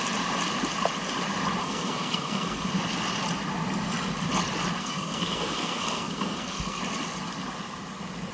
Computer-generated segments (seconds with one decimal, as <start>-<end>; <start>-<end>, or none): 1.6-2.7; 4.8-6.8